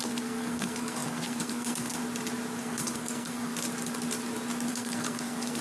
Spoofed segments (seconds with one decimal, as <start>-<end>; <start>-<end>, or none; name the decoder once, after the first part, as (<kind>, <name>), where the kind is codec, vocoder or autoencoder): 0.0-2.0 (codec, SNAC); 2.6-3.5; 4.7-5.6